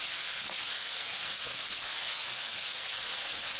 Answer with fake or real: fake